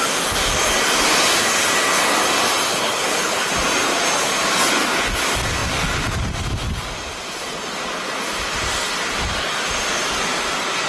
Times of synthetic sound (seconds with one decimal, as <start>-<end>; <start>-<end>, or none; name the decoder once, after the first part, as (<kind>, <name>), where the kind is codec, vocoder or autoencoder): 2.7-3.5 (codec, HILCodec)